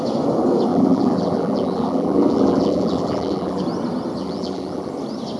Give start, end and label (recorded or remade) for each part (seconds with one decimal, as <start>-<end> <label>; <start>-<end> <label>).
0.0-0.7 recorded; 0.7-3.6 remade; 3.6-4.2 recorded; 4.2-4.9 remade; 4.9-5.4 recorded

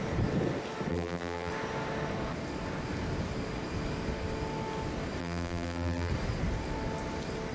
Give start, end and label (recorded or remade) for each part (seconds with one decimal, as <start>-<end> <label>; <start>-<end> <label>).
0.0-0.9 recorded; 0.9-1.5 remade; 1.5-5.2 recorded; 5.2-6.1 remade; 6.1-7.5 recorded

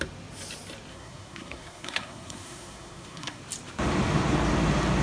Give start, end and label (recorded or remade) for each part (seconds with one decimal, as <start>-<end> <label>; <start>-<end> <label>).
0.0-0.9 recorded; 0.9-3.4 remade; 3.4-5.0 recorded

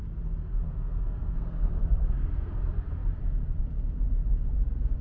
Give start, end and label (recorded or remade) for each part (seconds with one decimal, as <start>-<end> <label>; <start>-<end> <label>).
0.0-0.4 recorded; 0.4-2.6 remade; 2.6-5.0 recorded

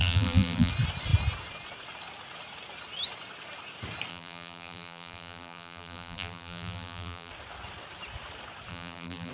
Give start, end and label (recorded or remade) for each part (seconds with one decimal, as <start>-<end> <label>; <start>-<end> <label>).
0.0-0.7 remade; 0.7-4.1 recorded; 4.1-7.3 remade; 7.3-8.7 recorded; 8.7-9.3 remade

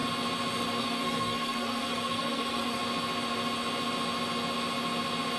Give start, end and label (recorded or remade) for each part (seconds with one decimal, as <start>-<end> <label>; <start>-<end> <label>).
0.0-0.8 recorded; 0.8-2.8 remade; 2.8-5.4 recorded